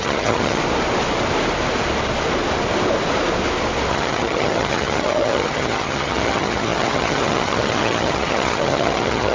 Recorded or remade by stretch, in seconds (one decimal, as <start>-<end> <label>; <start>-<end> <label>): 0.0-0.6 remade; 0.6-3.9 recorded; 3.9-9.3 remade